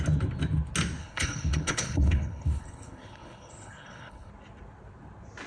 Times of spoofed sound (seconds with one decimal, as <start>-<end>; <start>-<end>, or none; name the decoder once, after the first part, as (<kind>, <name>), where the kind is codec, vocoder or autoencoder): 1.0-4.3 (codec, HILCodec)